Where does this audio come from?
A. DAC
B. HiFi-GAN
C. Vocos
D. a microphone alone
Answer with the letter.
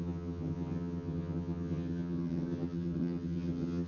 B